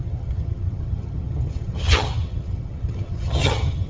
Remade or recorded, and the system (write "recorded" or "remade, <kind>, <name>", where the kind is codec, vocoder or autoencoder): remade, vocoder, HiFi-GAN